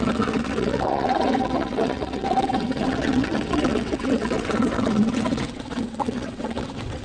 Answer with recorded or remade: remade